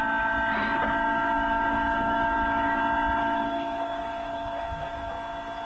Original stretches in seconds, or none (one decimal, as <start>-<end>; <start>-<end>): 0.0-1.1; 2.8-3.2; 5.1-5.6